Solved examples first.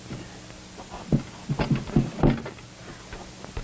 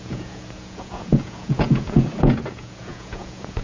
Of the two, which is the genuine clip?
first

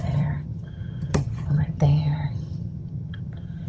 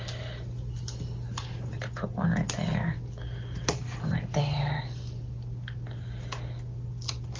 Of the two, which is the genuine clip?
second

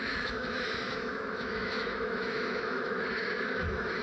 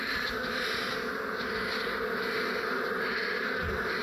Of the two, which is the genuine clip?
second